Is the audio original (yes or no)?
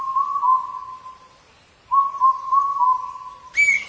yes